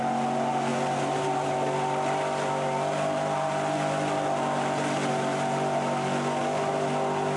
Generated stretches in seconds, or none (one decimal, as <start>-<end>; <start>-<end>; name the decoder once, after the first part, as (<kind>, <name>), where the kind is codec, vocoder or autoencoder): none